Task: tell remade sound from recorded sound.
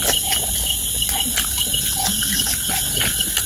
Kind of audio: recorded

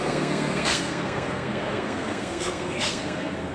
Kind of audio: remade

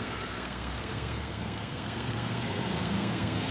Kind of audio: remade